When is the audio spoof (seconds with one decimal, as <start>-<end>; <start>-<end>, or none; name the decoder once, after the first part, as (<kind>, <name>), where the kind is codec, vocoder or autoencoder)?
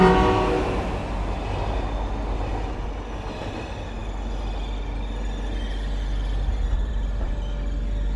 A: none